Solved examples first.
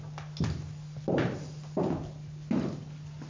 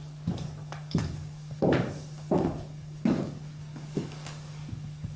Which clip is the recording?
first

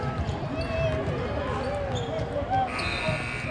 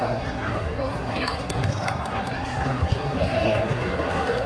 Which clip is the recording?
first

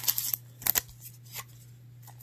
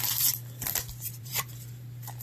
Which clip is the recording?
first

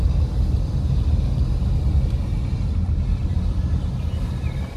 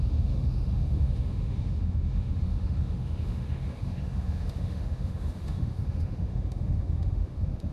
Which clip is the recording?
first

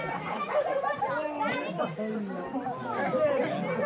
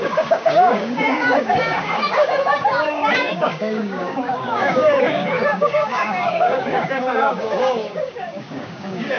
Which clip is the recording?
first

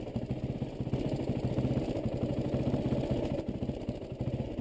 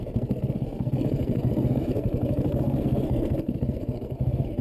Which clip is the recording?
first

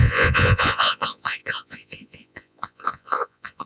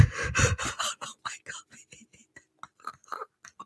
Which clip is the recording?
second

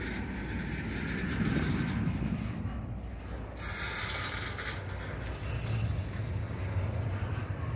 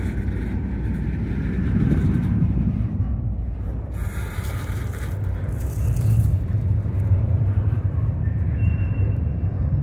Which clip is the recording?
first